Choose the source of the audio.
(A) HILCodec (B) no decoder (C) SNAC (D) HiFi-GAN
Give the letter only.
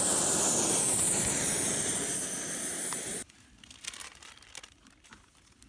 B